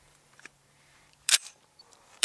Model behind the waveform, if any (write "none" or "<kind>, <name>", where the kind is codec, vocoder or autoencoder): vocoder, BigVGAN v2